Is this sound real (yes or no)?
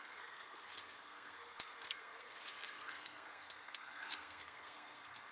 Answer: no